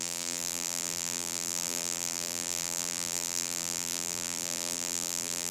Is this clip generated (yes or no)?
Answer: yes